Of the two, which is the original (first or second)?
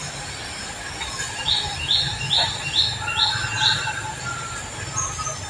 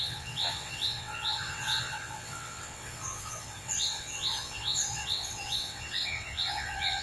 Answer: first